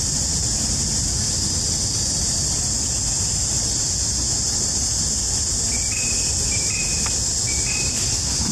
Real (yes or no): yes